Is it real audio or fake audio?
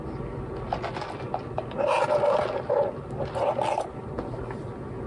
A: real